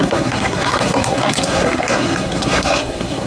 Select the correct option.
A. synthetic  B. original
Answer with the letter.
A